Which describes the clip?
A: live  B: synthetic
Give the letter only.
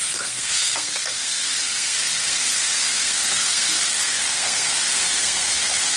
B